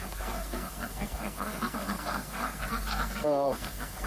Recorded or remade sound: remade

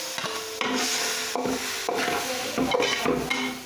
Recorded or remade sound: recorded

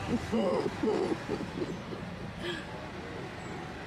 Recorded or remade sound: recorded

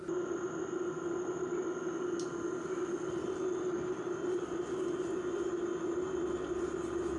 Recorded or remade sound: recorded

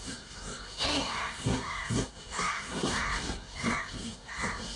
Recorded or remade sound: remade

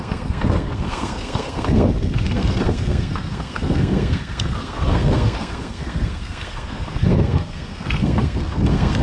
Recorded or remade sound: remade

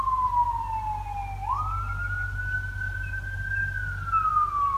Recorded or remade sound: recorded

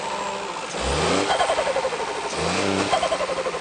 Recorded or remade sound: recorded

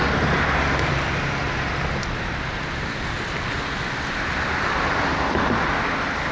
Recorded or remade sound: recorded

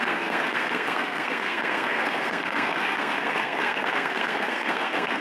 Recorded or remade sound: remade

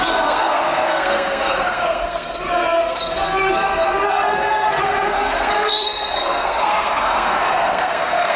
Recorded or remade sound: remade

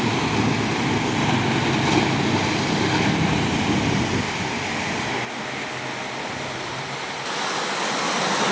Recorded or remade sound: recorded